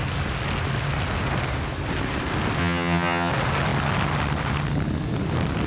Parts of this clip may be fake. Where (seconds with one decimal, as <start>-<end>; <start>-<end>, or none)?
2.6-3.3